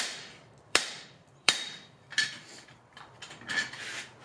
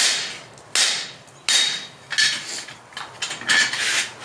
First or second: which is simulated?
first